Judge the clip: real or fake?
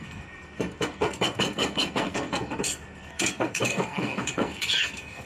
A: fake